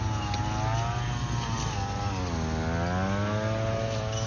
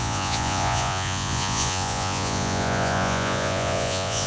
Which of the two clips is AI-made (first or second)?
second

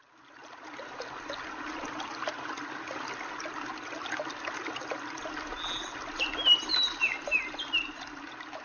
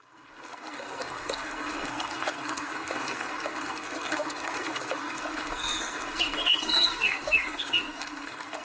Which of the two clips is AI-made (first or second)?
second